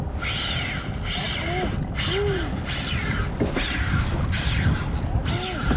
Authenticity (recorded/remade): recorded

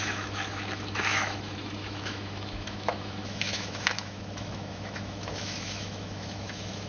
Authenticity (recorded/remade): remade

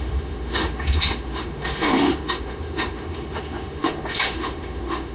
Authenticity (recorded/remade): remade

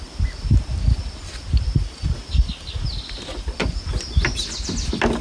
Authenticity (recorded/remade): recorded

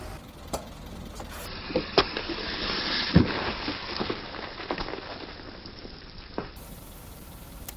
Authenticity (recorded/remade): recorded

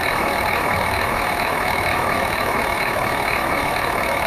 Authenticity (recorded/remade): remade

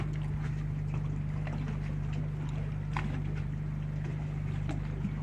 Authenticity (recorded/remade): recorded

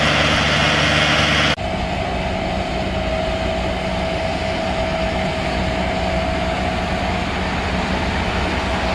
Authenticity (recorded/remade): recorded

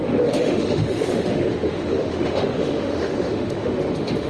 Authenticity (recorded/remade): remade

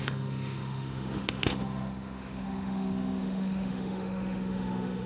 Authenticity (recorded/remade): remade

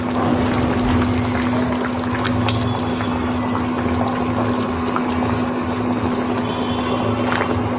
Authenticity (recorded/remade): recorded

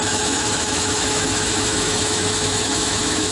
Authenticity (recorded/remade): remade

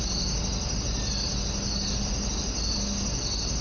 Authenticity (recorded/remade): recorded